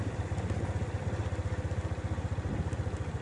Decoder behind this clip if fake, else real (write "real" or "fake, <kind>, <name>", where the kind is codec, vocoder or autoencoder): real